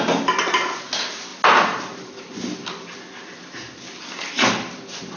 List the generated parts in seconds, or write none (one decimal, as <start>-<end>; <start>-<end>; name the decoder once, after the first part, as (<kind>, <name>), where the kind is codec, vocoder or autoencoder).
none